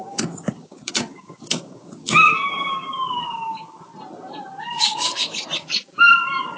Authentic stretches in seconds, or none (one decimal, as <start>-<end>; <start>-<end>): 3.9-4.6; 5.5-6.0